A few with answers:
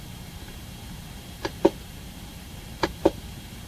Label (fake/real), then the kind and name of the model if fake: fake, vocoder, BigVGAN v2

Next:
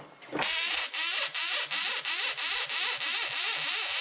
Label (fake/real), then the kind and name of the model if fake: real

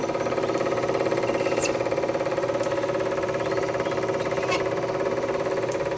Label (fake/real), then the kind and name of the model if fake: fake, vocoder, BigVGAN v2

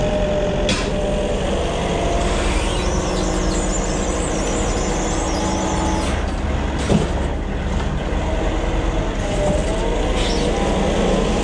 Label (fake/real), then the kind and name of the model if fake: real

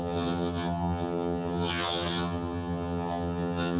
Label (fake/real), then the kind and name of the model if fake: fake, vocoder, HiFi-GAN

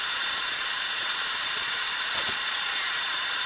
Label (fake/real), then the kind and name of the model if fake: fake, vocoder, Vocos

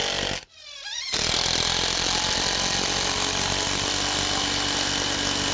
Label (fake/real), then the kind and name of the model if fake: real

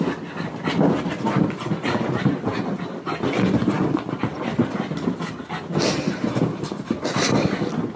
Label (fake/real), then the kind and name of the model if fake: real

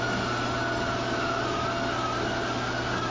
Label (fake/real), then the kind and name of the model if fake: real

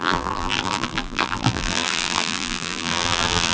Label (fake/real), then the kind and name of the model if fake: fake, vocoder, BigVGAN v2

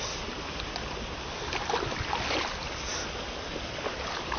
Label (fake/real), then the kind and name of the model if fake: real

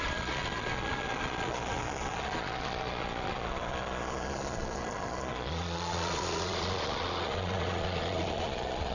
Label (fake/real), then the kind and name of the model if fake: fake, vocoder, Vocos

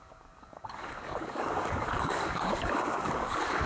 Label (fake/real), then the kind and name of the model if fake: fake, codec, DAC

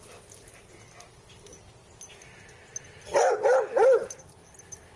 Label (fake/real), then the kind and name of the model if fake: real